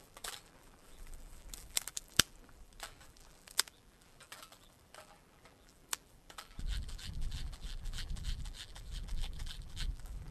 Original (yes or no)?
no